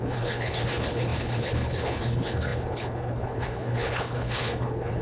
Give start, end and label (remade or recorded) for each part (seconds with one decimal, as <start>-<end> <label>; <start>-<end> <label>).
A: 0.0-5.0 remade